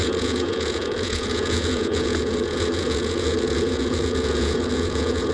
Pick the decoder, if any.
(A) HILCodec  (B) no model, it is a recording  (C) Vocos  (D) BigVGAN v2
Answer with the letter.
C